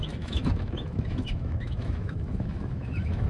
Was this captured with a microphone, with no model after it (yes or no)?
no